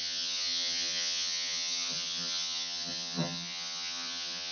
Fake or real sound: fake